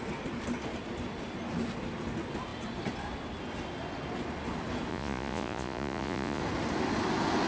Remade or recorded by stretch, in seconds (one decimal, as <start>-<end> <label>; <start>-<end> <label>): 0.0-4.9 recorded; 4.9-6.4 remade; 6.4-7.5 recorded